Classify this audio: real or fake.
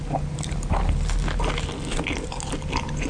real